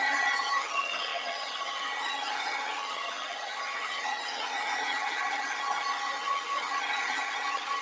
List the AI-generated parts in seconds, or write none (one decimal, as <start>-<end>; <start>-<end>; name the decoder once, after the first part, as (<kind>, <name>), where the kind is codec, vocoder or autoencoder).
0.0-7.8 (vocoder, HiFi-GAN)